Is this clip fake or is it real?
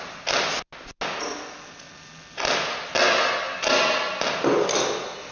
real